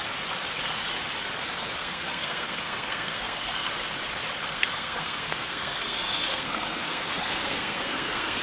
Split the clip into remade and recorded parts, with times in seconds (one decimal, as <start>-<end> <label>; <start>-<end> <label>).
0.0-1.8 recorded; 1.8-3.7 remade; 3.7-4.4 recorded; 4.4-8.4 remade